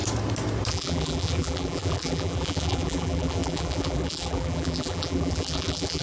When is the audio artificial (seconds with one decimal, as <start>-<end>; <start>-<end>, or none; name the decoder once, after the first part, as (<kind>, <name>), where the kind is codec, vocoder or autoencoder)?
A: 0.7-6.0 (vocoder, BigVGAN v2)